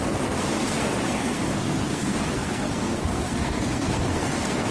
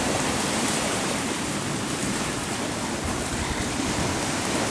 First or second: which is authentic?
second